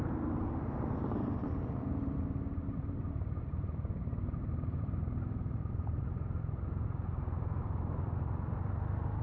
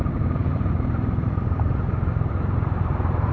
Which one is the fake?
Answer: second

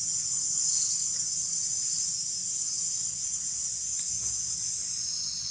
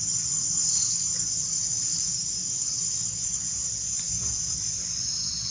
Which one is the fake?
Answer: second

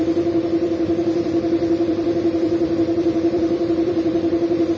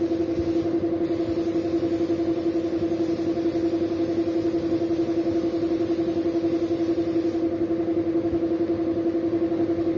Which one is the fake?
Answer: first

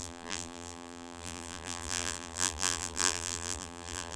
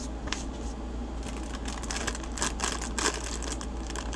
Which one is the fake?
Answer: first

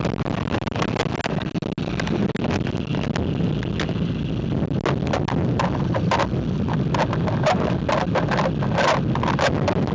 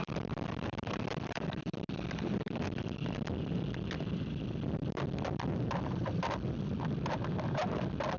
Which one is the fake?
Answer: second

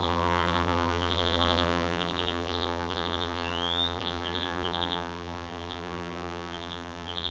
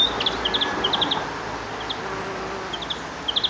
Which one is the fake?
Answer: first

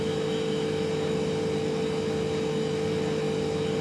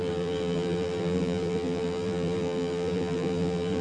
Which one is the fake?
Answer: second